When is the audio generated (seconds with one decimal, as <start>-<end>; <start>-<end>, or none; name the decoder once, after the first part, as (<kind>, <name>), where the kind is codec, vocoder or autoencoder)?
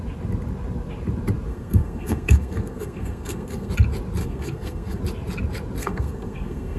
1.5-3.7 (codec, SNAC); 4.2-5.0; 5.8-6.8